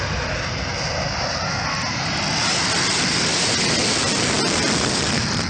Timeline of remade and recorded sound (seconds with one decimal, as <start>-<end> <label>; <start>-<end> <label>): 0.0-5.5 recorded